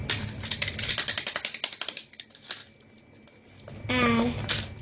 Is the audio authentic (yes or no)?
yes